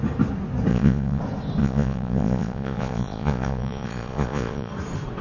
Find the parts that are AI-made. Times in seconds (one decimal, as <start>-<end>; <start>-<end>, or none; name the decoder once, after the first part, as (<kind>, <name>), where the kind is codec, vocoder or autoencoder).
0.7-1.2 (vocoder, Vocos); 1.6-4.7